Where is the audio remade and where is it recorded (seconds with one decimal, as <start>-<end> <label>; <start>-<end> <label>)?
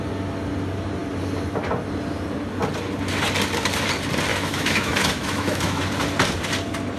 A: 0.0-4.3 recorded; 4.3-5.8 remade; 5.8-7.0 recorded